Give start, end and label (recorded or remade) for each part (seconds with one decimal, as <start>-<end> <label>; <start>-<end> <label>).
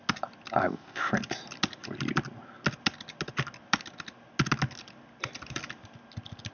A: 0.0-0.6 recorded; 0.6-1.1 remade; 1.1-6.5 recorded